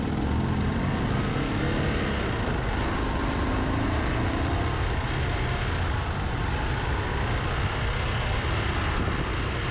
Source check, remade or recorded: recorded